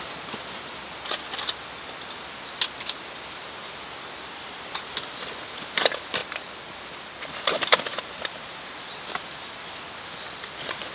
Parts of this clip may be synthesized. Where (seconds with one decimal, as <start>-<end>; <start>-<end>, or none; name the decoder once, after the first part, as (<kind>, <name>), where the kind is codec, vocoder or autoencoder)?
none